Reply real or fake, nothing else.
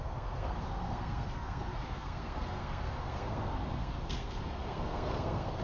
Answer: fake